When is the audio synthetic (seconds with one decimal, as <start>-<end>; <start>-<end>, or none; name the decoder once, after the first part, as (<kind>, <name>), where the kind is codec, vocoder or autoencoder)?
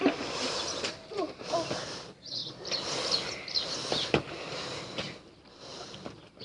0.0-2.4 (vocoder, BigVGAN v2); 3.9-6.4